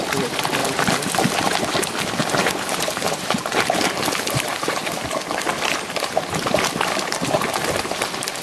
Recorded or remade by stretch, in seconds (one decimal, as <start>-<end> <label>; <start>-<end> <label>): 0.0-8.4 recorded